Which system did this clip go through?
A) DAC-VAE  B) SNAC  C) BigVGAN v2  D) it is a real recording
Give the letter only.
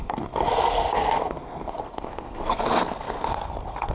B